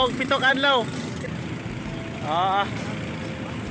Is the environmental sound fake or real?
real